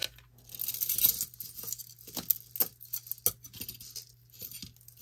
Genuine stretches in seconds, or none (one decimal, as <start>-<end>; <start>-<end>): 0.0-5.0